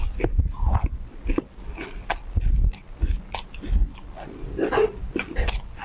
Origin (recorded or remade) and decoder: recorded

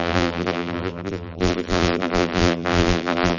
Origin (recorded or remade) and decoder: remade, vocoder, BigVGAN v2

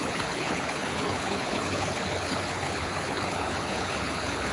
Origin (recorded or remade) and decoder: remade, codec, HILCodec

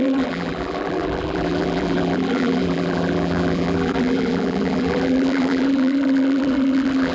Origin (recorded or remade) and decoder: remade, vocoder, BigVGAN v2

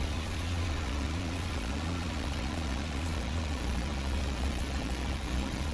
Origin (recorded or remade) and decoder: remade, vocoder, Vocos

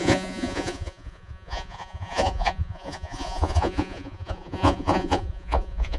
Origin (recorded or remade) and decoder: remade, vocoder, Vocos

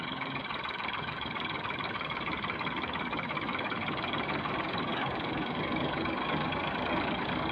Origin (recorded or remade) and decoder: remade, codec, DAC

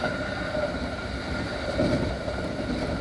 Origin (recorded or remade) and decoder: recorded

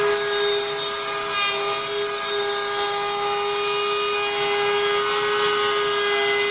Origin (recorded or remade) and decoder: recorded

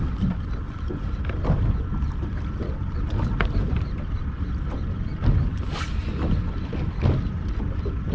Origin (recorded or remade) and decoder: recorded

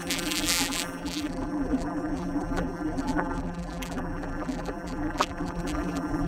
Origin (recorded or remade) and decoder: remade, vocoder, BigVGAN v2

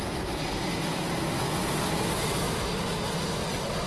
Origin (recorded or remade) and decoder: recorded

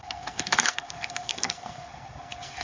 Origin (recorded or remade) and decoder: remade, codec, SNAC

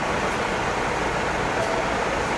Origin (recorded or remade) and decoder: recorded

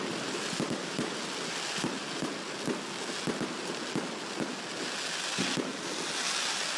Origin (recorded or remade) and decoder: recorded